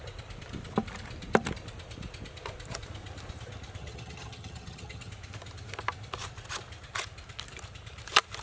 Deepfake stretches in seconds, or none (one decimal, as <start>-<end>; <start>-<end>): 3.8-5.1